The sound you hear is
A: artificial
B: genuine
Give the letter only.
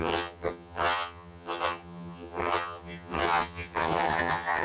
A